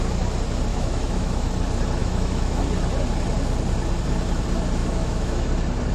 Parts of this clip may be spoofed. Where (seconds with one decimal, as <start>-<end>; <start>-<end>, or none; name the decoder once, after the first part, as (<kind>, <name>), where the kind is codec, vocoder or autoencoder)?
0.7-1.5 (autoencoder, DAC-VAE); 2.0-2.6; 4.8-5.5